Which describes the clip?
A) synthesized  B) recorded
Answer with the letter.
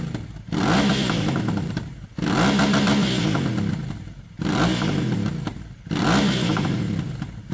B